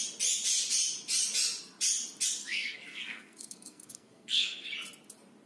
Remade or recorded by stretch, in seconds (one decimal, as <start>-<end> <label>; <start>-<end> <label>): 0.0-2.4 recorded; 2.4-4.7 remade; 4.7-5.5 recorded